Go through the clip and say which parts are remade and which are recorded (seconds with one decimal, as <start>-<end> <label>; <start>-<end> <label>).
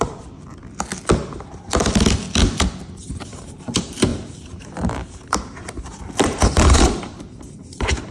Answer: 0.0-0.6 remade; 0.6-3.0 recorded; 3.0-8.1 remade